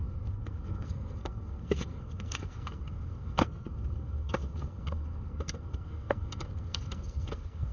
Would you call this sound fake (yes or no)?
yes